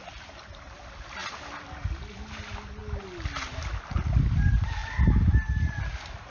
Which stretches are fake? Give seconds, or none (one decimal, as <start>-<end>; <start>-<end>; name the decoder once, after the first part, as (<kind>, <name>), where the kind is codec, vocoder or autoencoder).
none